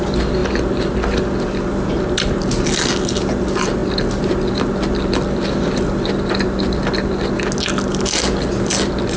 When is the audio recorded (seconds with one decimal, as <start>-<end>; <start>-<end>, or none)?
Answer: 0.0-9.2